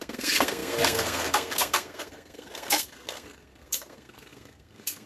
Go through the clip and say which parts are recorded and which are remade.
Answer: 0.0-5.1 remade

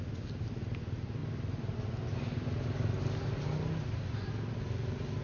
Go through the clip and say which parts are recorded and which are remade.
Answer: 0.0-5.2 recorded

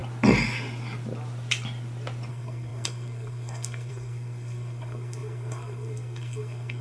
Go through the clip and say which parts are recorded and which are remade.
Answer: 0.0-2.3 recorded; 2.3-6.8 remade

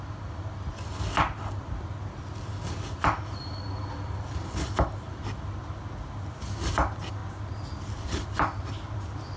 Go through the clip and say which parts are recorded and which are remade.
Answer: 0.0-9.4 recorded

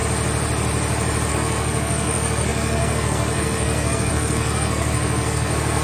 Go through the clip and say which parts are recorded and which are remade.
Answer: 0.0-1.3 recorded; 1.3-5.8 remade

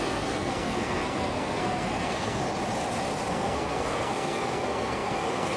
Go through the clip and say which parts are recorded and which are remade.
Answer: 0.0-2.4 remade; 2.4-3.3 recorded; 3.3-5.6 remade